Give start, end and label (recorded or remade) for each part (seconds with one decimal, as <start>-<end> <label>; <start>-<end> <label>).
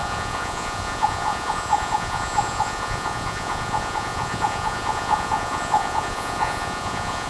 0.0-7.3 remade